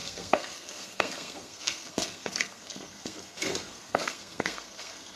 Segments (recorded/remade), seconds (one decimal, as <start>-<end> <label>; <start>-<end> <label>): 0.0-5.2 remade